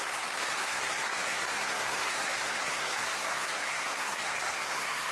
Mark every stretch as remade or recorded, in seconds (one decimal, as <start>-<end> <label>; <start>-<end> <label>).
0.0-5.1 remade